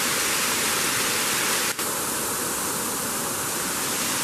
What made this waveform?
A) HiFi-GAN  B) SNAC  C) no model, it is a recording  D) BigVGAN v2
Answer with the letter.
C